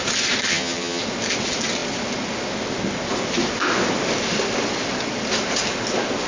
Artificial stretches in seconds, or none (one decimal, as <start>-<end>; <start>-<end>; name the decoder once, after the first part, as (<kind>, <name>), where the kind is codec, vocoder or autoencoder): 0.5-1.0 (vocoder, HiFi-GAN)

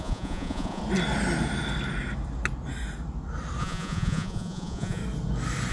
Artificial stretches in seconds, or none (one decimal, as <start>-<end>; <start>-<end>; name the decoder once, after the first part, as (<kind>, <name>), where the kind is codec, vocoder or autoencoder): 0.0-0.8 (vocoder, Vocos); 3.6-5.0

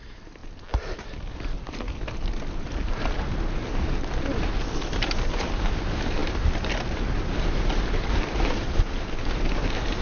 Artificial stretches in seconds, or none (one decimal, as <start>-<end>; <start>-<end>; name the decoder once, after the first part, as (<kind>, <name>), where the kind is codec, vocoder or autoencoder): none